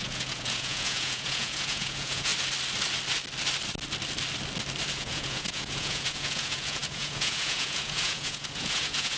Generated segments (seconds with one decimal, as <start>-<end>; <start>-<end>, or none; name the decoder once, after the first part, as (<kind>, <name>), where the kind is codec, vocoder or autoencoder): 0.0-2.3 (vocoder, Vocos); 4.9-9.2